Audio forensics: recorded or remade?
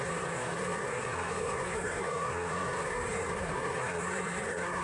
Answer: remade